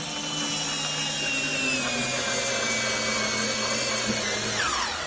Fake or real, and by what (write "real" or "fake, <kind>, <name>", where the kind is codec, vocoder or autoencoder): real